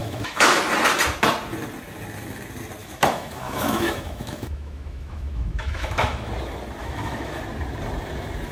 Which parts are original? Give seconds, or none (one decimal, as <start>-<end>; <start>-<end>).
0.6-2.8; 6.3-6.8; 7.4-8.5